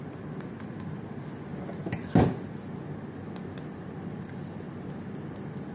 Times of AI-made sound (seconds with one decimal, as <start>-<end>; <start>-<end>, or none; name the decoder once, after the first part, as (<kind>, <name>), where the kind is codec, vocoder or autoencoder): none